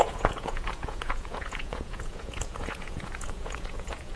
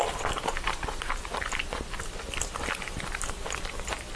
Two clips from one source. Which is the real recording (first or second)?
second